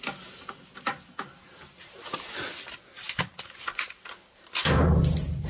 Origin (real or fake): real